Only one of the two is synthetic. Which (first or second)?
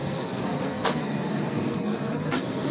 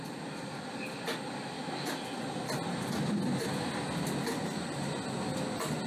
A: first